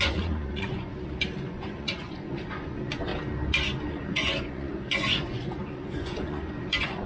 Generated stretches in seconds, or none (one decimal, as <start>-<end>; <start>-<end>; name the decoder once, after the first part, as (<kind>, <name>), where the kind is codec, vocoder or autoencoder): 0.0-0.9 (vocoder, Vocos); 1.4-3.1; 3.9-7.1